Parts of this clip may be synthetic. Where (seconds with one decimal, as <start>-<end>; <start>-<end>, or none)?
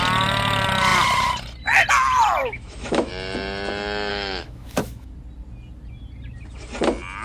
2.4-3.1; 4.1-5.1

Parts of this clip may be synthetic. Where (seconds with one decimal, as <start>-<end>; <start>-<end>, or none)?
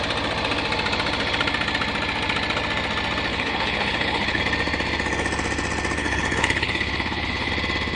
3.3-4.4; 6.0-7.5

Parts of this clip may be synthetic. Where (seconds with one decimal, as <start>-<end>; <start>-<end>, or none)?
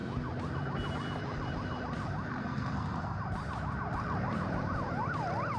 2.4-3.2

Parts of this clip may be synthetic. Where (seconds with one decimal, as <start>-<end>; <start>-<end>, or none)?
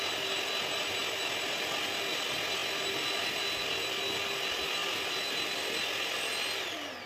none